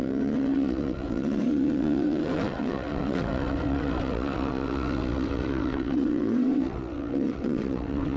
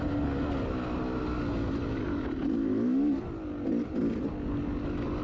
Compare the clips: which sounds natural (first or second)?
second